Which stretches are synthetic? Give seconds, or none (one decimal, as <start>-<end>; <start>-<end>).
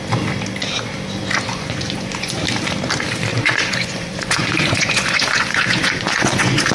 1.5-2.4; 3.3-6.7